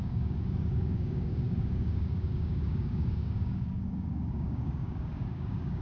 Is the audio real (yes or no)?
no